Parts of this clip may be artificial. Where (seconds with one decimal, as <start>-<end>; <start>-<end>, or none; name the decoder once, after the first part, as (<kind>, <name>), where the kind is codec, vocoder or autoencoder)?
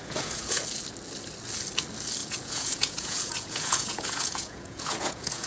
0.0-0.6 (vocoder, Vocos); 2.2-5.5